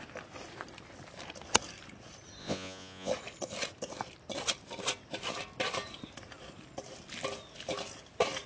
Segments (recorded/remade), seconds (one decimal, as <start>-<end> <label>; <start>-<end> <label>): 0.0-2.4 recorded; 2.4-3.1 remade; 3.1-8.5 recorded